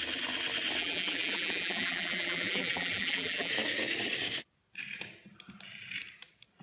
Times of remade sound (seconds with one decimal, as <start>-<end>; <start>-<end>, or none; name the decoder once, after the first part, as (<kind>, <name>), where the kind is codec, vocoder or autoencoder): 0.8-3.5 (vocoder, BigVGAN v2)

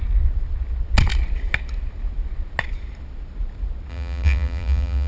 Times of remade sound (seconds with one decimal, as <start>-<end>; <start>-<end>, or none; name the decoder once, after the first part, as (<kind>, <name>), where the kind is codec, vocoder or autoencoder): 3.9-5.1 (vocoder, BigVGAN v2)

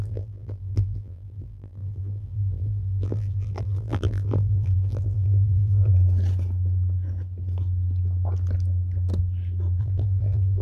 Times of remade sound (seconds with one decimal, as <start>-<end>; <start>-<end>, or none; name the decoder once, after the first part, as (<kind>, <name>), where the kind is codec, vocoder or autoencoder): 0.0-5.9 (vocoder, BigVGAN v2); 9.8-10.6

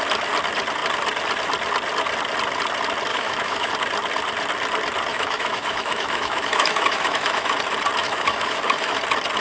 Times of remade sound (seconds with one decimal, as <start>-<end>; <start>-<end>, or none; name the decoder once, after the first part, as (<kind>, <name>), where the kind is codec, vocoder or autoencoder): 3.1-3.7 (autoencoder, DAC-VAE); 5.1-7.6; 8.0-9.0

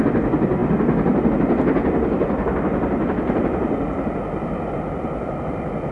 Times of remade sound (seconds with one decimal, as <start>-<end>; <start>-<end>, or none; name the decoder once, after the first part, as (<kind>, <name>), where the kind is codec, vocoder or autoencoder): none

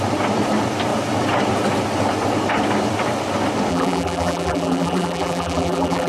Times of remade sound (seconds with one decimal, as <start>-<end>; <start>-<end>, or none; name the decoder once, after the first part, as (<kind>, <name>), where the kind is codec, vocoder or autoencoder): 3.7-6.1 (vocoder, BigVGAN v2)

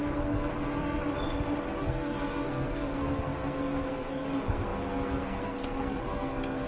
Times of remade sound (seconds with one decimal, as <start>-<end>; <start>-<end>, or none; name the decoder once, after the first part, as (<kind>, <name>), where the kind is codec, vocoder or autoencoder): 0.0-1.0 (codec, SNAC); 1.7-6.7

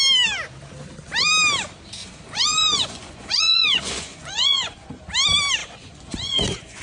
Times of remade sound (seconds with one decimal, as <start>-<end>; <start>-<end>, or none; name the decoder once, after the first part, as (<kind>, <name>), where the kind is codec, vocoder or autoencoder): 2.0-5.0 (vocoder, Vocos); 5.6-6.8